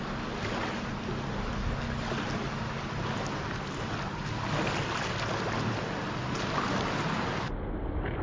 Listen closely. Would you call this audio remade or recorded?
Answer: recorded